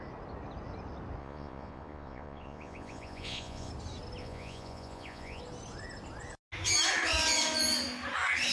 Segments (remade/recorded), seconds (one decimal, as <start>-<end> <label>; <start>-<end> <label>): 0.0-1.2 recorded; 1.2-3.7 remade; 3.7-4.2 recorded; 4.2-5.4 remade; 5.4-8.5 recorded